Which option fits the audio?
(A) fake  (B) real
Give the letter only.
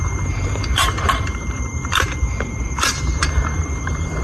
A